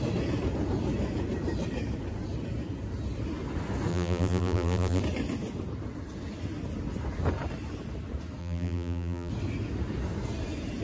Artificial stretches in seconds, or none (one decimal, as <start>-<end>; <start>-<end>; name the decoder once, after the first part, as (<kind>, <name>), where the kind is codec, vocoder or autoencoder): 3.9-5.0 (vocoder, BigVGAN v2); 8.4-9.3